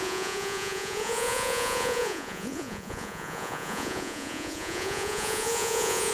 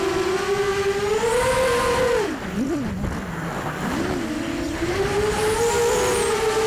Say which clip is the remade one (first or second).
first